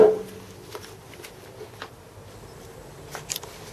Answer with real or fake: real